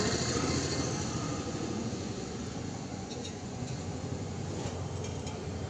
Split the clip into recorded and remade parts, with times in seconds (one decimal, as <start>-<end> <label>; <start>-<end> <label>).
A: 0.0-1.3 recorded; 1.3-4.7 remade; 4.7-5.7 recorded